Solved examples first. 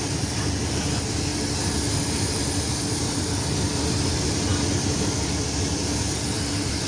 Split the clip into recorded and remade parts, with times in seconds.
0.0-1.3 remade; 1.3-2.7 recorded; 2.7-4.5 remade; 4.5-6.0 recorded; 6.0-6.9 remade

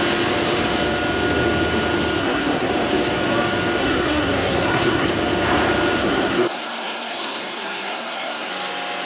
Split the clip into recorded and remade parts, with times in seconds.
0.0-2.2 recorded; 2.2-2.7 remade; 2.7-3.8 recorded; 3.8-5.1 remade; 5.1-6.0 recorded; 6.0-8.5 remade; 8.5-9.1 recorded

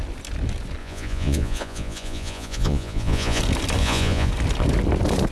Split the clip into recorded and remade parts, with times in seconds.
0.0-0.8 recorded; 0.8-3.4 remade; 3.4-3.8 recorded; 3.8-4.3 remade; 4.3-5.3 recorded

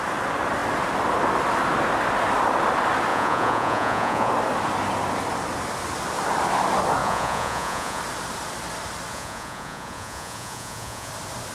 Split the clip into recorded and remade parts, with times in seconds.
0.0-3.1 recorded; 3.1-4.3 remade; 4.3-7.0 recorded; 7.0-8.0 remade; 8.0-9.1 recorded; 9.1-11.1 remade; 11.1-11.5 recorded

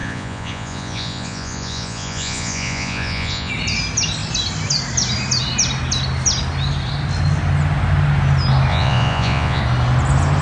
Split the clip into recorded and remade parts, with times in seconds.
0.0-3.5 remade; 3.5-8.7 recorded; 8.7-9.6 remade; 9.6-10.4 recorded

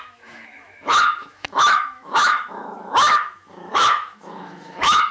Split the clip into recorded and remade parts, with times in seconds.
0.0-5.1 remade

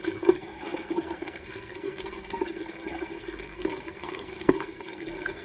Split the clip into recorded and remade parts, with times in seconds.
0.0-5.4 remade

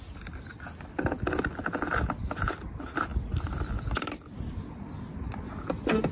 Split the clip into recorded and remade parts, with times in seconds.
0.0-6.1 recorded